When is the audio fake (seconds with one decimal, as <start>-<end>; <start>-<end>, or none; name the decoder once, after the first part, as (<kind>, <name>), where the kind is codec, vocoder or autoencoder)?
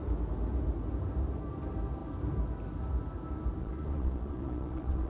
3.6-5.1 (vocoder, Vocos)